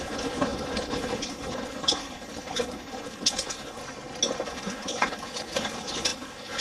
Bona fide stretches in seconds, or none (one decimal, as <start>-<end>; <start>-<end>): 3.8-4.5